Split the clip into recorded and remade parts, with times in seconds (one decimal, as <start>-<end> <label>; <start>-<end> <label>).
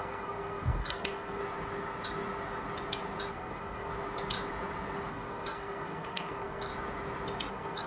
0.0-1.4 remade; 1.4-3.3 recorded; 3.3-3.9 remade; 3.9-5.1 recorded; 5.1-6.7 remade; 6.7-7.5 recorded; 7.5-7.9 remade